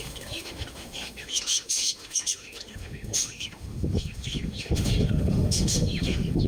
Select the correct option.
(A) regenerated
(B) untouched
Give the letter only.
A